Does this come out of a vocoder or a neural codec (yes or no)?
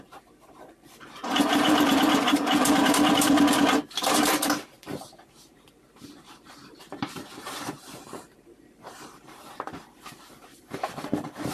yes